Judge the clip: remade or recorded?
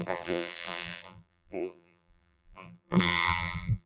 remade